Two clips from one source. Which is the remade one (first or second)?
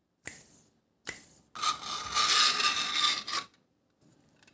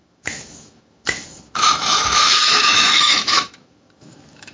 second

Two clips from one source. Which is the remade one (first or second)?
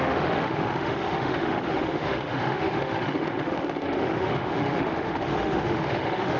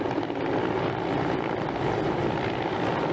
first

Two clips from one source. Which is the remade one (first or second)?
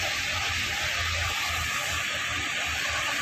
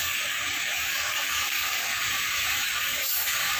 second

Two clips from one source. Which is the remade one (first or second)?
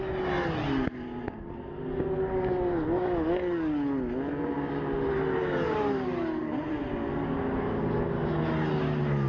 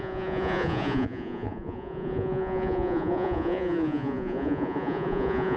second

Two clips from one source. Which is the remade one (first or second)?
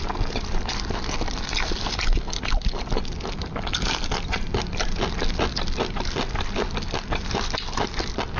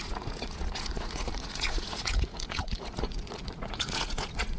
second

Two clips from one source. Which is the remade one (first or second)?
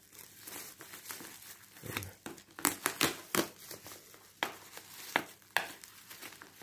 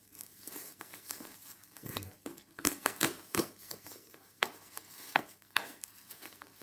second